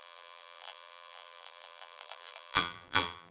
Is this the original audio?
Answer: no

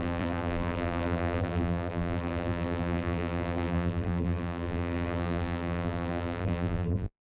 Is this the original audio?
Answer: no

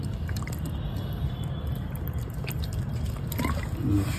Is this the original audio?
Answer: yes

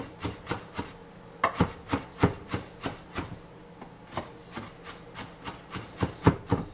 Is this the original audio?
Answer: yes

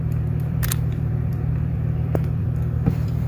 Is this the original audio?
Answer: no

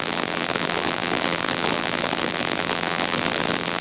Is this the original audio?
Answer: no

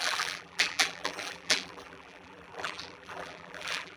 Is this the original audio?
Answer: no